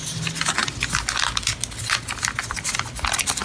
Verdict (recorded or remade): recorded